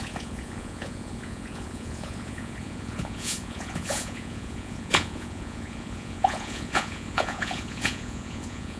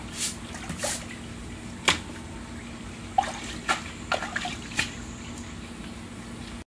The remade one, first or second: first